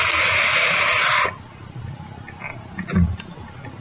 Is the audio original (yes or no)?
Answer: yes